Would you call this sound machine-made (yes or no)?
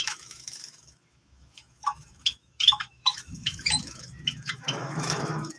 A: yes